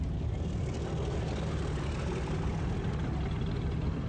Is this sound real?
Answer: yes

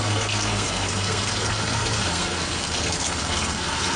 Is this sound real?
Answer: no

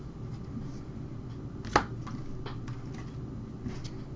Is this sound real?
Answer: yes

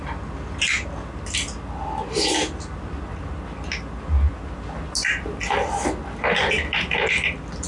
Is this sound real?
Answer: yes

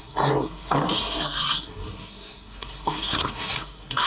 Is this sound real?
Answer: no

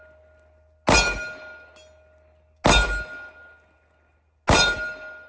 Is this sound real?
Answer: yes